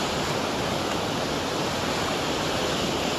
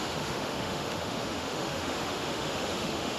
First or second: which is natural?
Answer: first